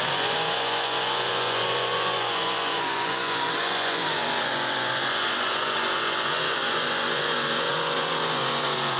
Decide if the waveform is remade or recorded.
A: remade